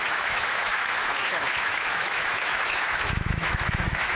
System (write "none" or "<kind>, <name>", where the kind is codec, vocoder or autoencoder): autoencoder, DAC-VAE